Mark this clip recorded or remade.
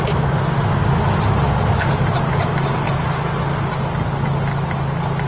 recorded